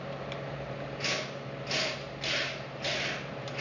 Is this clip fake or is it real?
real